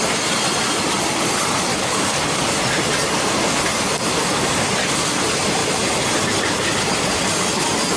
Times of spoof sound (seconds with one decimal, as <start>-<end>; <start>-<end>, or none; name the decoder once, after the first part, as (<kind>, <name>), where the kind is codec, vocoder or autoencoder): 1.7-2.4 (codec, DAC)